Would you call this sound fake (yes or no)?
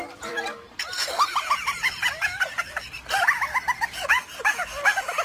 yes